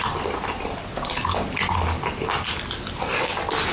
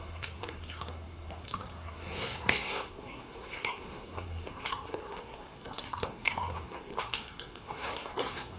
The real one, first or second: first